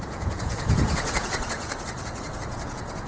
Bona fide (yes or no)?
no